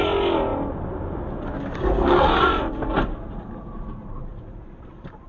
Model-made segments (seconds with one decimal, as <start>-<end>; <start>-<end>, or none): 4.3-5.3